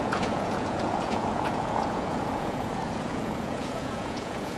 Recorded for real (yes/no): no